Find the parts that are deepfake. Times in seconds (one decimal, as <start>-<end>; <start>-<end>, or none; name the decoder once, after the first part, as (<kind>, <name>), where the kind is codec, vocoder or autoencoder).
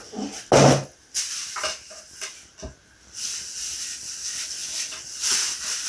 none